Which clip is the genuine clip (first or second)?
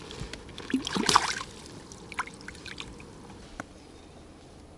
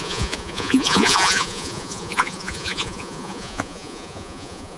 first